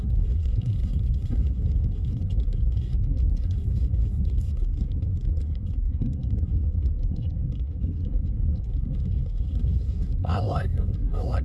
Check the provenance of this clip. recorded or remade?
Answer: remade